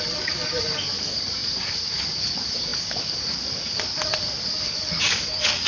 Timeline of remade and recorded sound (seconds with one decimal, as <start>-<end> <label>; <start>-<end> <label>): 0.0-5.7 remade